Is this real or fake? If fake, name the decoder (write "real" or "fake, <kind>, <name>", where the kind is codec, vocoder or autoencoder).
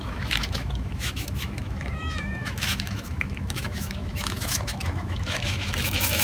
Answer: fake, autoencoder, DAC-VAE